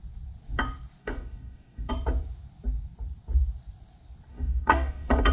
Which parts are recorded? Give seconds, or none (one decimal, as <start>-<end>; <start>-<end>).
0.0-1.0; 1.9-4.3

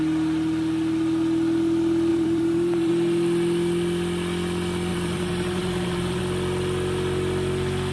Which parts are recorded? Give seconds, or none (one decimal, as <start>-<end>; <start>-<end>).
0.0-2.1; 2.9-4.9; 6.2-7.9

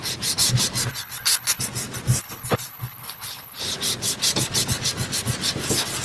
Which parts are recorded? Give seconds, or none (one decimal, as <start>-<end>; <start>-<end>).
0.0-0.9; 1.6-2.2; 3.6-6.0

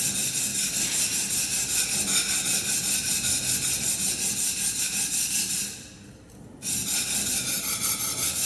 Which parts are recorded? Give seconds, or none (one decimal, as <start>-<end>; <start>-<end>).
0.5-4.8; 6.8-7.7

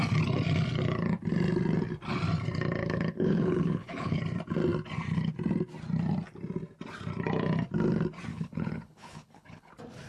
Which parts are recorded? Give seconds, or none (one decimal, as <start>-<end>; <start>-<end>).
0.0-2.8; 4.2-8.3; 9.7-10.1